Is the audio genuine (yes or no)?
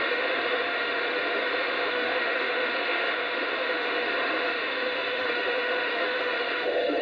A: no